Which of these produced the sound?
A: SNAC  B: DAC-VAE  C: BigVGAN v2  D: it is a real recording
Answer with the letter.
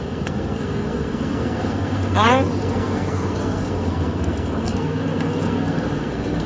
A